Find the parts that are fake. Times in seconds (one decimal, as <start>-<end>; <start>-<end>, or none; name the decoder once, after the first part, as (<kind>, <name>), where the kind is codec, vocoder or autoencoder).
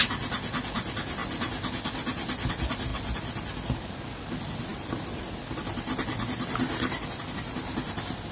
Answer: none